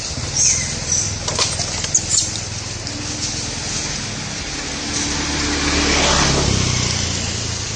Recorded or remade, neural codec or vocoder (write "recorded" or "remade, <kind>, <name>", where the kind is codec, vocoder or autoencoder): recorded